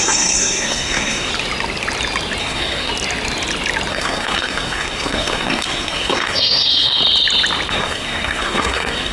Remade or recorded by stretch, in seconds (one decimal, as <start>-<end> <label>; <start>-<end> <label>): 0.0-1.3 remade; 1.3-2.4 recorded; 2.4-2.9 remade; 2.9-3.9 recorded; 3.9-7.0 remade; 7.0-7.7 recorded; 7.7-9.1 remade